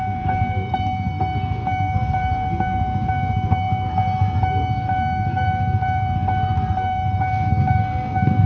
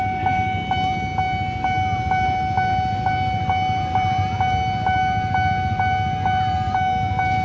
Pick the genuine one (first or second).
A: second